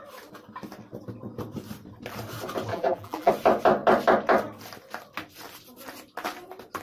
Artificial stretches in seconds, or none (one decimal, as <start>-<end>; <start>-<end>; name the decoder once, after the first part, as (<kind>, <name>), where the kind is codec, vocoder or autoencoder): 2.7-3.3 (vocoder, BigVGAN v2)